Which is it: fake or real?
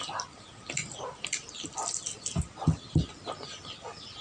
real